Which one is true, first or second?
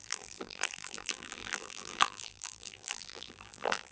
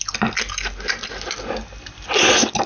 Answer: second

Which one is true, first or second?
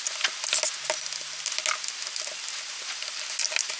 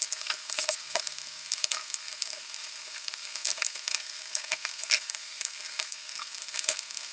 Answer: first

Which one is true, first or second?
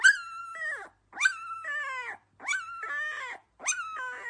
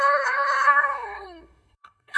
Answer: first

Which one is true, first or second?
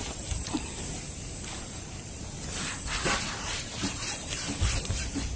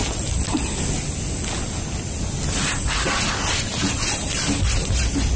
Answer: second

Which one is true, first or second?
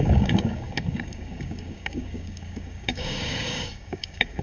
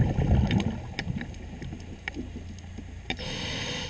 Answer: second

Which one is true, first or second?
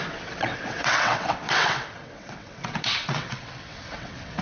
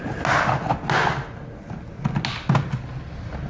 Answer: second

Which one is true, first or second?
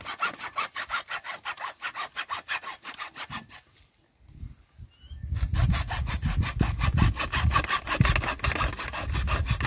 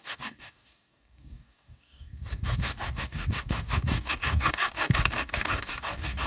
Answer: first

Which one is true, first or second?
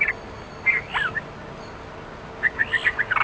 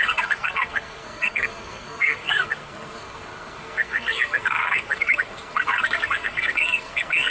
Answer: first